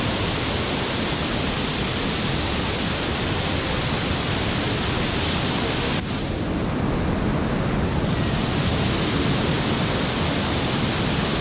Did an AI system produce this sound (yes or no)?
no